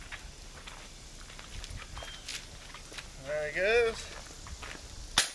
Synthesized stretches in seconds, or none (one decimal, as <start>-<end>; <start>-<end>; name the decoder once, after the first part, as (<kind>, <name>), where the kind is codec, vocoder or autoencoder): none